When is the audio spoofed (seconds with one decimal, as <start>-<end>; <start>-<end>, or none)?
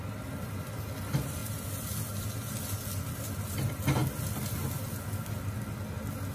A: none